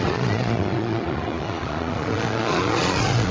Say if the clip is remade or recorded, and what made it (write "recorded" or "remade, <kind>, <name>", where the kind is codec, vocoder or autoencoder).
remade, vocoder, Vocos